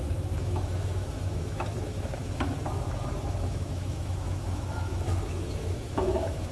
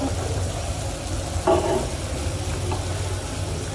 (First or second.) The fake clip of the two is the first